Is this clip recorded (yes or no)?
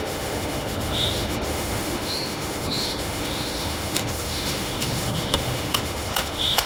no